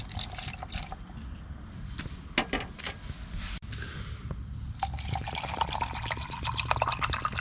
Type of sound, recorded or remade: recorded